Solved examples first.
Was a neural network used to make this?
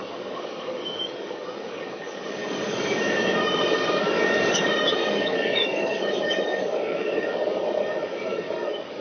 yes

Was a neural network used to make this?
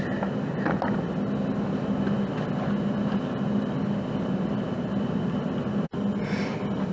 no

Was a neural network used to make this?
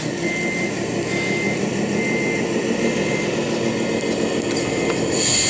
no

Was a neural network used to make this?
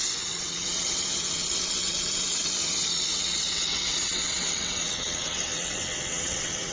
yes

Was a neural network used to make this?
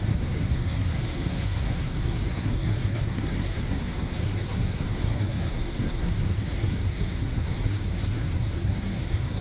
yes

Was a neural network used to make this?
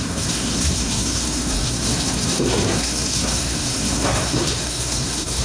yes